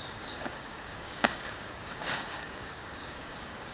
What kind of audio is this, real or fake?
fake